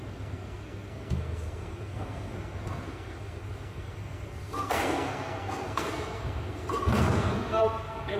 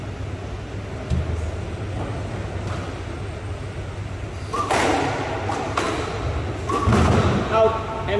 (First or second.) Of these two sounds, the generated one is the first